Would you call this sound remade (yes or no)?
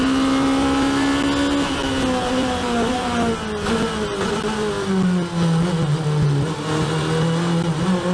no